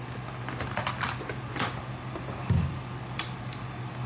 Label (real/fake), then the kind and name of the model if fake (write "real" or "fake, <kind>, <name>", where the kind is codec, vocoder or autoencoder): real